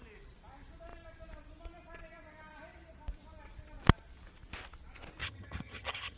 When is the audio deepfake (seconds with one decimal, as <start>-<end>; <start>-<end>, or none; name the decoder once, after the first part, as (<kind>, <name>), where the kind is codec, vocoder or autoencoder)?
5.2-6.2 (vocoder, HiFi-GAN)